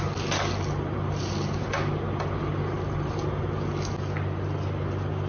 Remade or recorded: recorded